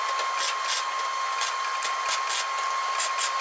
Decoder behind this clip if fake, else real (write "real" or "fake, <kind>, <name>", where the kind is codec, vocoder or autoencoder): real